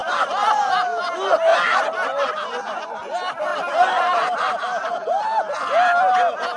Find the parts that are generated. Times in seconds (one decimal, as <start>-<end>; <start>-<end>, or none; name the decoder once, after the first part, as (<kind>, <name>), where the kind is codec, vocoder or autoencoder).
0.0-0.6 (vocoder, BigVGAN v2); 1.5-2.6; 3.5-4.9